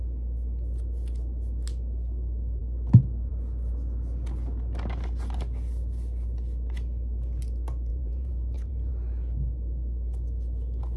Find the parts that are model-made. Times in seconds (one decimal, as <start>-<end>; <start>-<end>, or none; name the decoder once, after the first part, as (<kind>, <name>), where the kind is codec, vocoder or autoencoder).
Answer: 7.9-8.9 (vocoder, BigVGAN v2)